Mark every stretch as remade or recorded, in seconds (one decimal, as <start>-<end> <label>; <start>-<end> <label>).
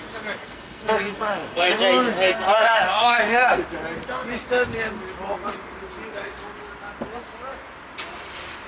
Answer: 0.0-0.4 recorded; 0.4-1.7 remade; 1.7-2.3 recorded; 2.3-3.6 remade; 3.6-8.7 recorded